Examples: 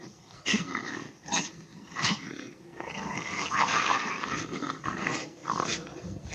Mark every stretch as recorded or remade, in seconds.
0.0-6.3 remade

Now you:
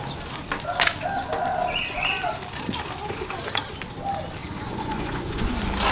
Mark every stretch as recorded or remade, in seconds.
0.0-4.4 recorded; 4.4-5.5 remade; 5.5-5.9 recorded

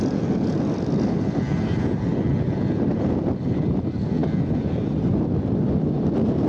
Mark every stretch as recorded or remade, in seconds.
0.0-6.5 recorded